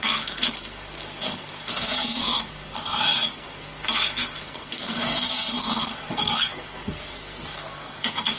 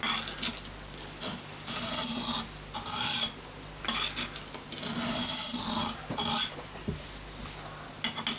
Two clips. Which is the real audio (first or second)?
second